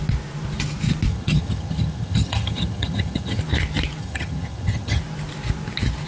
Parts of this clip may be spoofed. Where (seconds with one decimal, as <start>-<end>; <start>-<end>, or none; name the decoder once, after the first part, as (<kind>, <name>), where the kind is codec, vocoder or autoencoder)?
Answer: 1.1-3.4 (vocoder, HiFi-GAN); 4.0-5.0